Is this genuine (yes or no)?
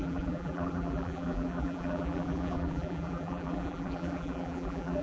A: no